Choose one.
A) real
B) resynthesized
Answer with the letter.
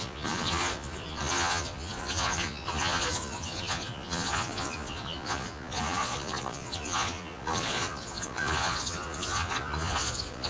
B